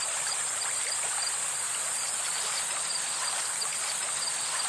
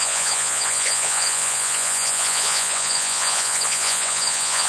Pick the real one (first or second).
first